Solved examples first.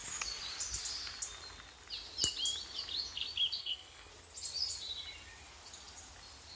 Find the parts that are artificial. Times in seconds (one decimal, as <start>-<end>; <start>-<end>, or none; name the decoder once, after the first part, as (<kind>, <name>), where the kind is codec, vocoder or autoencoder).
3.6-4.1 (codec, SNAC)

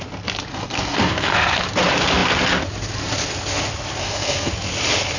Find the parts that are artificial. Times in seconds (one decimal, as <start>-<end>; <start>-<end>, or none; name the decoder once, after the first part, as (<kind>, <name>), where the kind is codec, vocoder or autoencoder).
0.5-1.6 (codec, SNAC); 4.0-4.5

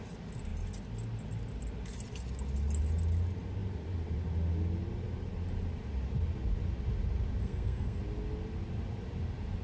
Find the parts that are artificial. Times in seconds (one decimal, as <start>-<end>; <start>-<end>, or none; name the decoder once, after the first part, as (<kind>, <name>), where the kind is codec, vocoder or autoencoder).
7.4-8.0 (codec, SNAC)

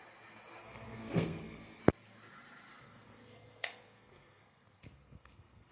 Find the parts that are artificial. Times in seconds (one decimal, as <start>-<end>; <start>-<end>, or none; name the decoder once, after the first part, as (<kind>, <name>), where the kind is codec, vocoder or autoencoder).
0.6-1.8 (codec, SNAC); 2.8-5.7

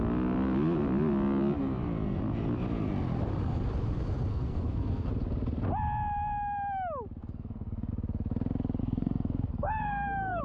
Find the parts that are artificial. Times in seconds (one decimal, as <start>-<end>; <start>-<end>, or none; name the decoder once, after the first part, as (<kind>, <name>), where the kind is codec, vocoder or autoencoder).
4.3-5.1 (codec, SNAC); 7.2-7.9; 8.8-10.4